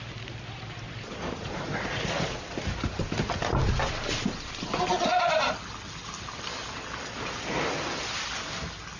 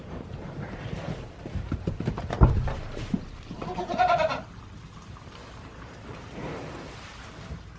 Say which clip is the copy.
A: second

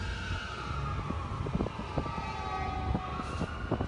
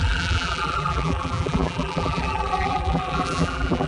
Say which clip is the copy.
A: second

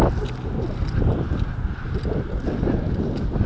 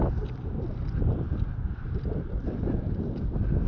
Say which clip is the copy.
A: second